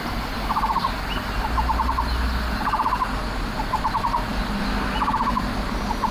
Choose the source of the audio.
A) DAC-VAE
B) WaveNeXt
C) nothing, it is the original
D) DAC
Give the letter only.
C